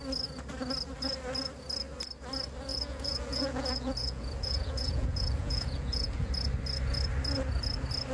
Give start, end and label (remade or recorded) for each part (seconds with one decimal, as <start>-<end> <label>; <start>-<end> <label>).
0.0-2.7 recorded; 2.7-6.3 remade; 6.3-8.1 recorded